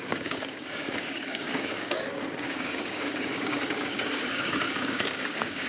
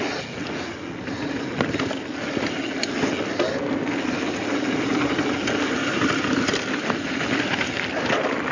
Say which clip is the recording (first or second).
second